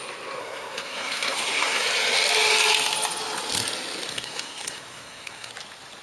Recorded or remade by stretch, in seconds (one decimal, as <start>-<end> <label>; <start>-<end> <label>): 0.0-0.4 recorded; 0.4-1.8 remade; 1.8-4.1 recorded; 4.1-5.5 remade; 5.5-6.0 recorded